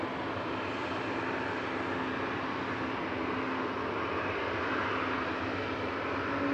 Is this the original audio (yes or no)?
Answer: yes